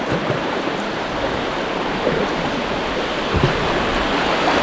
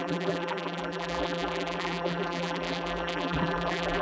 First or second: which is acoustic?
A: first